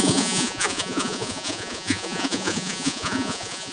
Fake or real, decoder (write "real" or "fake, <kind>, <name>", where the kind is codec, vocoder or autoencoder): fake, vocoder, Vocos